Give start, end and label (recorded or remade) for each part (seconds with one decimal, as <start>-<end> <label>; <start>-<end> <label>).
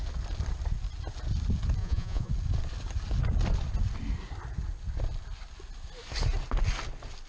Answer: 0.0-1.8 recorded; 1.8-2.3 remade; 2.3-7.3 recorded